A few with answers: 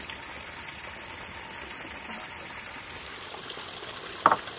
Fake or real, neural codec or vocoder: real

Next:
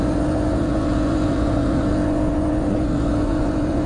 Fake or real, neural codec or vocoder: fake, vocoder, Vocos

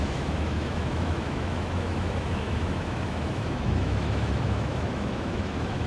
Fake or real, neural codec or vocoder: fake, autoencoder, DAC-VAE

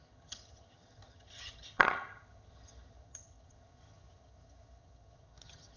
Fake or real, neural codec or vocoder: fake, vocoder, HiFi-GAN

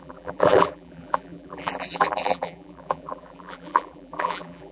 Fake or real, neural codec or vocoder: fake, vocoder, BigVGAN v2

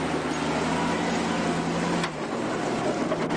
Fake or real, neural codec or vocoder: real